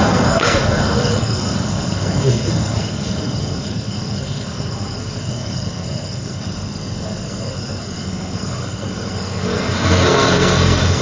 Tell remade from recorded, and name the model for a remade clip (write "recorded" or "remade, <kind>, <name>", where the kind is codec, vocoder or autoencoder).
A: remade, codec, SNAC